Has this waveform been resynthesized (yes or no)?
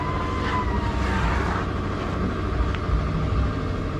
no